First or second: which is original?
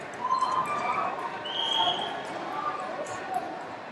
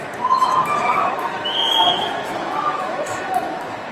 first